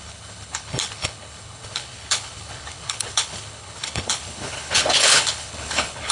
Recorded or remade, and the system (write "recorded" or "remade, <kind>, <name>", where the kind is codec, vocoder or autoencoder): remade, codec, HILCodec